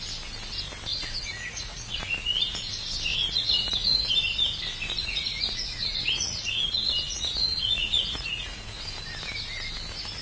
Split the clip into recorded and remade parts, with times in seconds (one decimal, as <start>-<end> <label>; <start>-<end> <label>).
0.0-0.9 recorded; 0.9-2.7 remade; 2.7-3.1 recorded; 3.1-4.1 remade; 4.1-5.0 recorded; 5.0-8.8 remade; 8.8-10.2 recorded